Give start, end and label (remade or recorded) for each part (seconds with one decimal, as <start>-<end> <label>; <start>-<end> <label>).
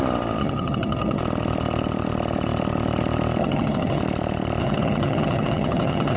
0.0-0.4 recorded; 0.4-1.2 remade; 1.2-3.4 recorded; 3.4-4.0 remade; 4.0-4.6 recorded; 4.6-6.2 remade